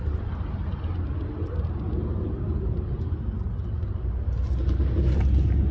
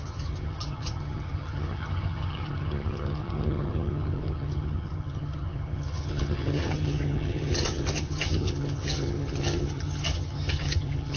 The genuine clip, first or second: first